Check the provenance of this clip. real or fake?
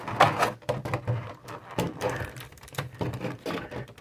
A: fake